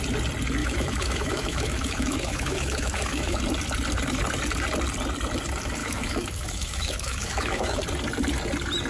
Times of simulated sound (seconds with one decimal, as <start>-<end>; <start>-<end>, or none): 0.6-3.4; 5.8-7.8